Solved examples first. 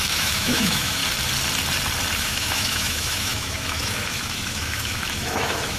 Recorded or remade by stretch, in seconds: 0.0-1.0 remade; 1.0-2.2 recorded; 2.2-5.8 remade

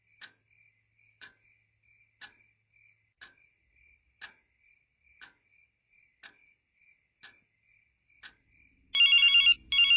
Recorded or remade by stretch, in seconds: 0.0-10.0 recorded

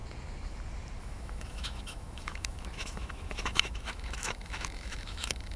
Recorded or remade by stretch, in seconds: 0.0-1.0 recorded; 1.0-5.6 remade

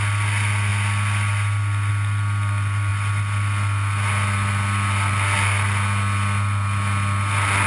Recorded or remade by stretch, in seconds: 0.0-7.7 recorded

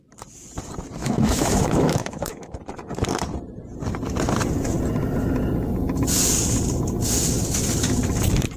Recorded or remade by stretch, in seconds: 0.0-1.0 recorded; 1.0-2.6 remade; 2.6-8.6 recorded

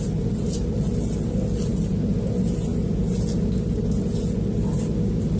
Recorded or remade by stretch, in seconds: 0.0-5.4 recorded

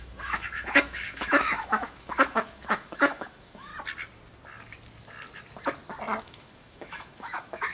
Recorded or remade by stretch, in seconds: 0.0-3.7 remade; 3.7-6.2 recorded; 6.2-7.7 remade